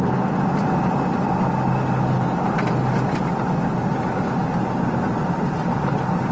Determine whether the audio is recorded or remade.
recorded